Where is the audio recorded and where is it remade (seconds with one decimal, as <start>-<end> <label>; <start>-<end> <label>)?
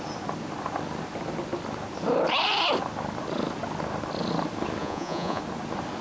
0.0-4.8 recorded; 4.8-5.4 remade; 5.4-6.0 recorded